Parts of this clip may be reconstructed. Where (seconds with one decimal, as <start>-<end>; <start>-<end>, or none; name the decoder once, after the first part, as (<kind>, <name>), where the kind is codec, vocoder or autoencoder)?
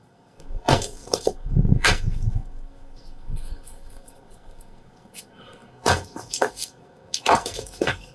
0.0-8.1 (codec, SNAC)